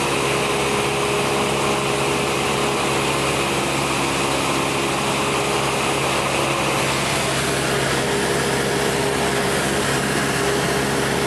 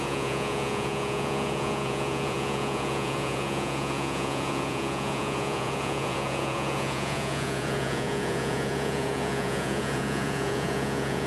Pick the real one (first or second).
first